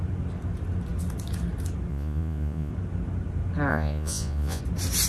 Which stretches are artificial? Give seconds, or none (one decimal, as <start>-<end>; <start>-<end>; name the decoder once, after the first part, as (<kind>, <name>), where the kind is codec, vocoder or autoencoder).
1.9-2.7 (vocoder, Vocos); 3.7-4.6